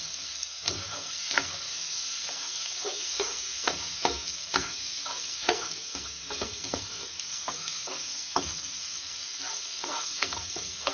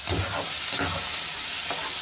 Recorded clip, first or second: second